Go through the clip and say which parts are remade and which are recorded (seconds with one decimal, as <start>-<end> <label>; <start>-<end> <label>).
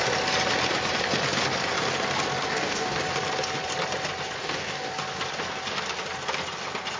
0.0-2.5 recorded; 2.5-3.0 remade; 3.0-4.4 recorded; 4.4-4.9 remade; 4.9-7.0 recorded